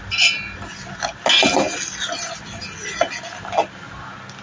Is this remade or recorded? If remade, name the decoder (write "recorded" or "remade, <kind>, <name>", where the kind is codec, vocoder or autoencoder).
recorded